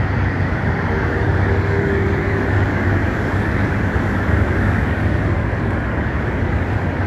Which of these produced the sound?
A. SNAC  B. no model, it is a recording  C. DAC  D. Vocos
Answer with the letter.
C